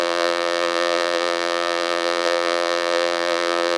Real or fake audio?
fake